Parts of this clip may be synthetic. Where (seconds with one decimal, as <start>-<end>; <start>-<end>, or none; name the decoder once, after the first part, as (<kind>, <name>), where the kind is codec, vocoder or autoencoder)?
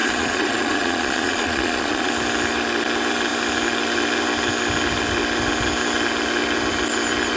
0.0-2.1 (vocoder, Vocos)